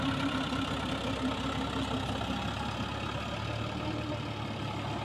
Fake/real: real